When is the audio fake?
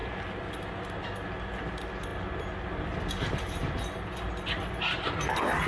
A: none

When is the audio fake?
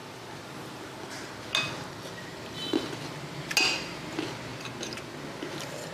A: none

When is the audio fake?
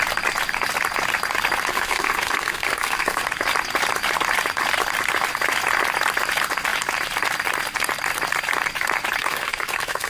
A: 1.7-3.2 (codec, SNAC); 9.2-10.1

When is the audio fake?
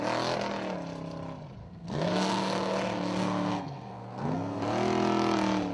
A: 1.6-4.6 (codec, SNAC)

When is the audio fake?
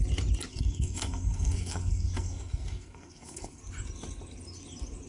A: 0.5-3.6 (codec, SNAC)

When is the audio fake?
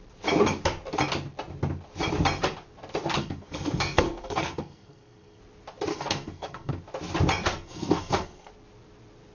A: 3.2-5.4 (codec, SNAC); 5.9-6.7; 7.5-8.5